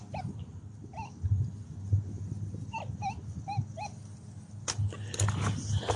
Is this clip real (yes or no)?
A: yes